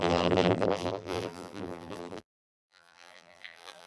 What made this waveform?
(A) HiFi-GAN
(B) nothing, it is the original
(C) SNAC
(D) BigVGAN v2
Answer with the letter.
D